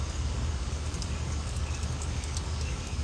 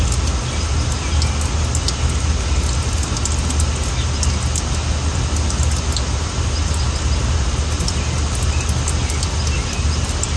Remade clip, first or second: first